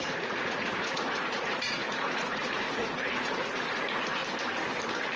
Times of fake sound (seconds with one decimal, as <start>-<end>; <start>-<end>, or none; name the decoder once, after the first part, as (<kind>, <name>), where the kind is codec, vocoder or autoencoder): 0.0-4.2 (vocoder, Vocos)